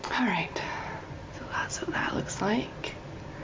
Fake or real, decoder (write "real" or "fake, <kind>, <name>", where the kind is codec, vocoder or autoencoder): real